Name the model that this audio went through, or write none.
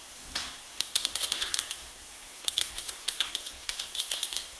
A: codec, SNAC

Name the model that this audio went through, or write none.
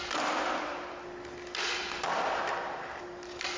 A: none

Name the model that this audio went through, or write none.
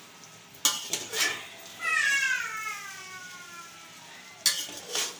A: none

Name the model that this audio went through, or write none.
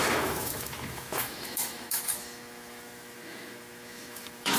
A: autoencoder, DAC-VAE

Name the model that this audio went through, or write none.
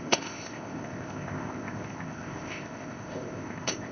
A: codec, ZipCodec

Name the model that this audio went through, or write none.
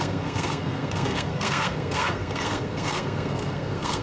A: codec, SNAC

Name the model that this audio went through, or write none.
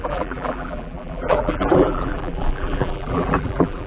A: vocoder, BigVGAN v2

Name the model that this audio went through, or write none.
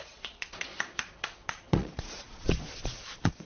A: vocoder, Vocos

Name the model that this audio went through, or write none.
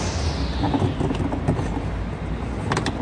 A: none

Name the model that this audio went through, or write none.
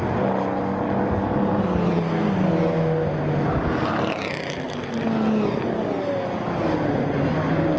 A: none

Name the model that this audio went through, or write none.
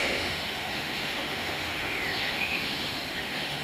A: autoencoder, DAC-VAE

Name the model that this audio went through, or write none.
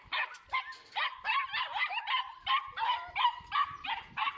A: none